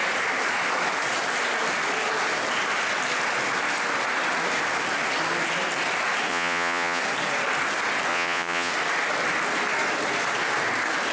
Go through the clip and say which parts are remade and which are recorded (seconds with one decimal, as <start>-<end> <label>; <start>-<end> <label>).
0.0-6.3 recorded; 6.3-7.0 remade; 7.0-8.1 recorded; 8.1-8.7 remade; 8.7-11.1 recorded